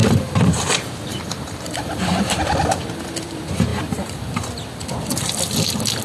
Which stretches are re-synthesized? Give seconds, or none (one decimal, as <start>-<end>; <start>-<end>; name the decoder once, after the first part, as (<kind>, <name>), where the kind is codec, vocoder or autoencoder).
0.0-0.7 (vocoder, BigVGAN v2); 1.1-2.3; 3.7-4.6